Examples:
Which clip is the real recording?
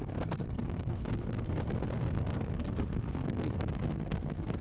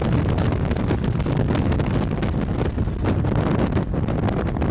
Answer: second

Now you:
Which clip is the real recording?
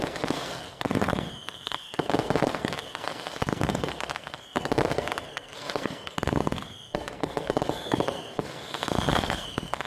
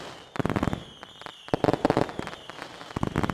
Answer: second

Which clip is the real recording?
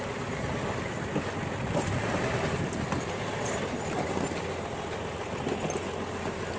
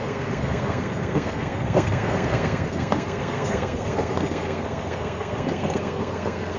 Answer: first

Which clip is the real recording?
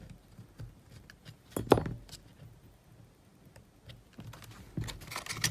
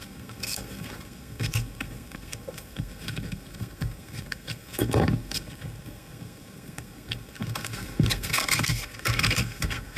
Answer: first